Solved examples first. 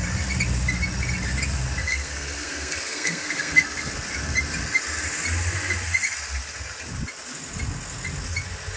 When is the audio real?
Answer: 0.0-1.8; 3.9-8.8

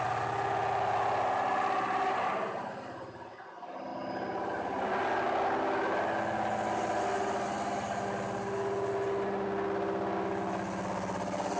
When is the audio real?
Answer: 0.0-11.6

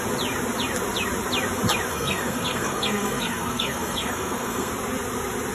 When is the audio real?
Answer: 0.0-1.9; 4.7-5.5

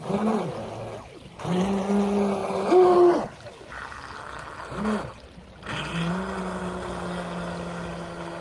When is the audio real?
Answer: 0.0-8.4